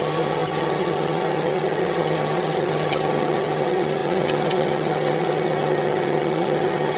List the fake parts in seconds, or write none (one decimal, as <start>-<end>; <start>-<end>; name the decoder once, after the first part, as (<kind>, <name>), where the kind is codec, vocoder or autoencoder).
0.0-7.0 (vocoder, HiFi-GAN)